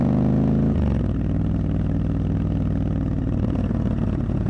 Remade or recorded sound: recorded